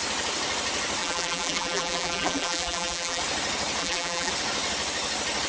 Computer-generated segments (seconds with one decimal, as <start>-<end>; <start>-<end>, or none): 1.0-3.2; 3.8-4.3